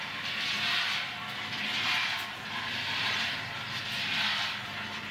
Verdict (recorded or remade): recorded